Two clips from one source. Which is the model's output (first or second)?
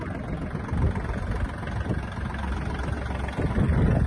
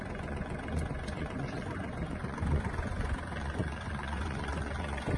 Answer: second